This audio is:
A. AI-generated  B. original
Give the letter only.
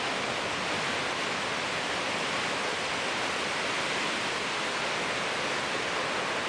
B